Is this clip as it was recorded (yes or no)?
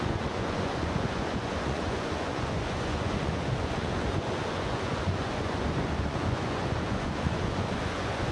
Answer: no